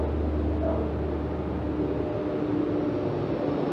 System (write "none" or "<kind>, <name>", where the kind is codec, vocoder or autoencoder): none